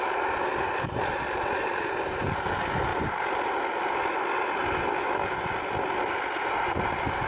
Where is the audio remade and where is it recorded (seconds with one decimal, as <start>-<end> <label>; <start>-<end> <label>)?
0.0-2.9 recorded; 2.9-4.2 remade; 4.2-7.3 recorded